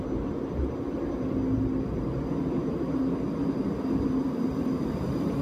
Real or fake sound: real